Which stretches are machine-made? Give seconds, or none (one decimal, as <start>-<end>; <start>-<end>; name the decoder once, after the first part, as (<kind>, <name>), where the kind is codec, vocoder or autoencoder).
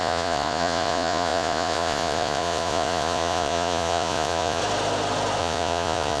0.0-4.6 (vocoder, Vocos); 5.4-6.2